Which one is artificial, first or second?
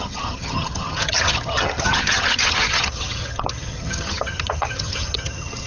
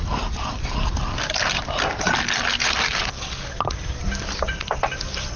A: first